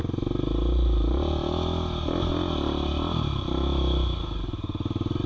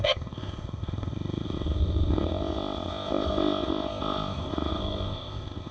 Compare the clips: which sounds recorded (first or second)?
first